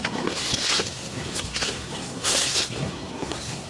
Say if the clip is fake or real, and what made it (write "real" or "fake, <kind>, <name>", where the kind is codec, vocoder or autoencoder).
fake, codec, SNAC